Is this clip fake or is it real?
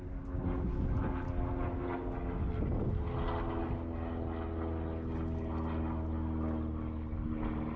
real